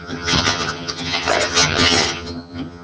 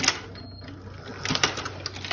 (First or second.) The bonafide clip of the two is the second